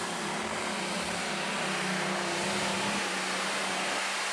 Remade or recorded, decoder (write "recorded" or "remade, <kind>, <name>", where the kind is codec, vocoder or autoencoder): recorded